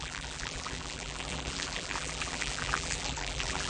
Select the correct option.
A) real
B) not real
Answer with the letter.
B